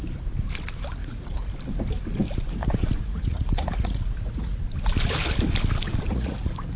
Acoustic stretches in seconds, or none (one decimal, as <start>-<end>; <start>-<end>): 0.0-1.0; 1.5-2.6; 4.6-6.1